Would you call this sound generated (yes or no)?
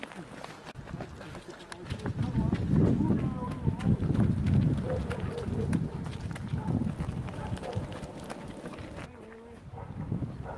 no